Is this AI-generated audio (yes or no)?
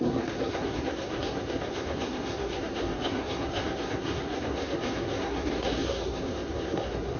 yes